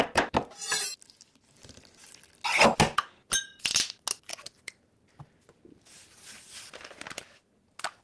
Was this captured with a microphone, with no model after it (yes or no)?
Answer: yes